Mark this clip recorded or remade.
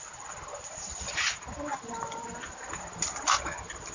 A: recorded